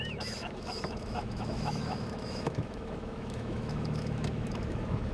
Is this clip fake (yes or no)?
yes